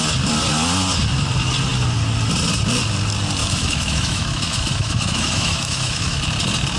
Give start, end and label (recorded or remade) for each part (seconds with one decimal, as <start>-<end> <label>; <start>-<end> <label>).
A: 0.0-3.4 recorded; 3.4-6.2 remade; 6.2-6.8 recorded